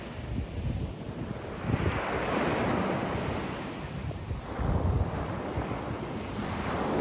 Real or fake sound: real